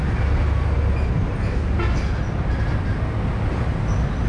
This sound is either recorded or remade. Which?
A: recorded